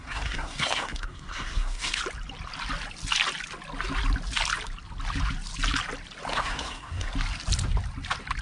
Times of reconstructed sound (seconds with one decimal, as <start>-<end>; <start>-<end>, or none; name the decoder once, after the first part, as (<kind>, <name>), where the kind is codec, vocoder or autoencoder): 0.0-2.0 (codec, SNAC); 6.3-7.1